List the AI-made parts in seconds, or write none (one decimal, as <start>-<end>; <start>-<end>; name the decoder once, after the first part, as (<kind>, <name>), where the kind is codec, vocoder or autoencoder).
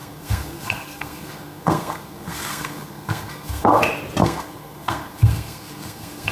0.0-3.8 (codec, SNAC); 4.2-6.3